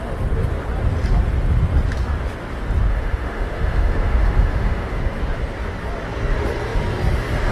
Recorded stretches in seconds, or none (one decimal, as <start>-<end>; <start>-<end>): 0.0-2.9; 5.0-7.5